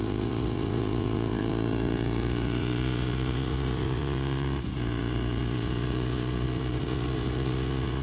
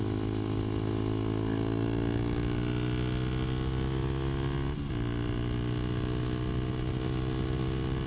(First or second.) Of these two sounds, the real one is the second